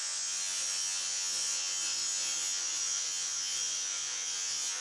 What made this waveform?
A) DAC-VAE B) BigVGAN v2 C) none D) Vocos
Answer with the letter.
D